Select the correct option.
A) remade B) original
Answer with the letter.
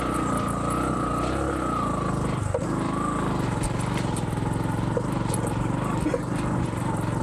B